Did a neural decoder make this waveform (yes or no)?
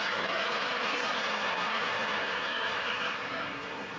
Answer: yes